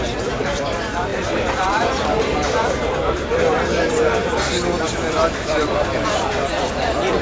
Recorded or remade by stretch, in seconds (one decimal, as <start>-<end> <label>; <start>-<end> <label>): 0.0-4.2 remade; 4.2-4.8 recorded; 4.8-7.2 remade